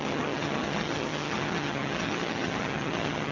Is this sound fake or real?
fake